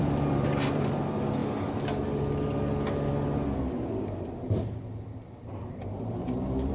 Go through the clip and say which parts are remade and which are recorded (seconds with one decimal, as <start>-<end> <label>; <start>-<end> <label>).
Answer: 0.0-1.4 remade; 1.4-5.4 recorded; 5.4-6.7 remade